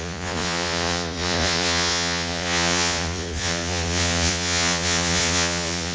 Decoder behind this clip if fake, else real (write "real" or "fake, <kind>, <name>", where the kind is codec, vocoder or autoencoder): fake, vocoder, Vocos